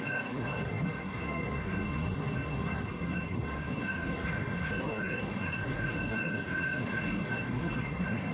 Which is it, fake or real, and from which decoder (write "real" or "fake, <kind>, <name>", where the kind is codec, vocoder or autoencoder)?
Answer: fake, codec, SNAC